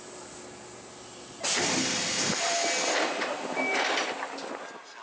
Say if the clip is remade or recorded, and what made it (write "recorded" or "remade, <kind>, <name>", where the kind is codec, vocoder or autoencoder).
recorded